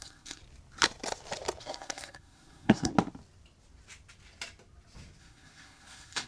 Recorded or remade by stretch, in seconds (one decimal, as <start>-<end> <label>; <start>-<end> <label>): 0.0-0.4 remade; 0.4-1.6 recorded; 1.6-2.9 remade; 2.9-5.2 recorded; 5.2-6.3 remade